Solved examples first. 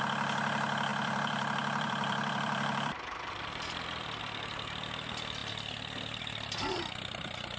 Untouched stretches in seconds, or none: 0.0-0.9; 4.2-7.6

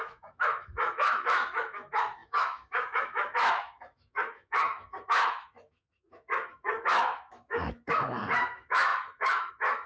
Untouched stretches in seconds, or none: none

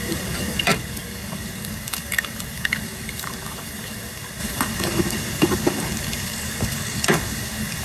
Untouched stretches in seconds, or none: none

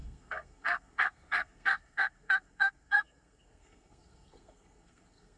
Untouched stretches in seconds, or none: none

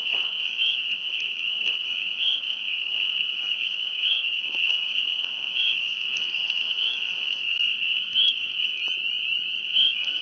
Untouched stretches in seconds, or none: 8.8-9.6

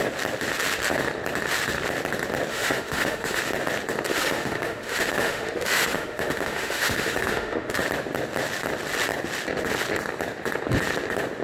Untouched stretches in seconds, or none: 0.0-2.5; 3.4-4.1; 7.8-11.4

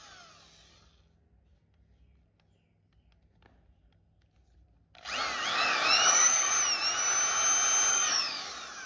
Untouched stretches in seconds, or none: 0.0-5.5; 6.5-7.9; 8.5-8.9